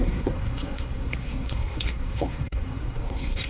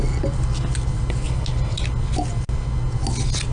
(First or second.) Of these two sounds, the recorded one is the second